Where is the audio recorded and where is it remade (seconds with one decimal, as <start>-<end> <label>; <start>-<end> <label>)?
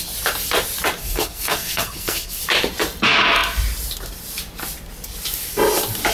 0.0-1.0 recorded; 1.0-2.4 remade; 2.4-6.1 recorded